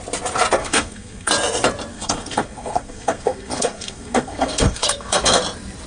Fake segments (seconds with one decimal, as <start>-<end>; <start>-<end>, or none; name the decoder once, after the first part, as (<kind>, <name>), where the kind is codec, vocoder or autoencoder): 0.6-1.3 (codec, SNAC); 1.9-5.4